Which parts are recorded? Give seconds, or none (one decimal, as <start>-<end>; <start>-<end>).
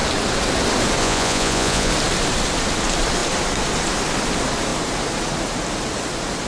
0.0-1.0; 1.9-6.5